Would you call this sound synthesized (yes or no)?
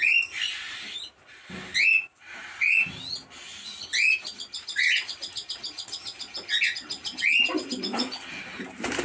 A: no